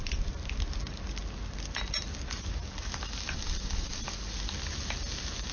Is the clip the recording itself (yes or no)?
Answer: yes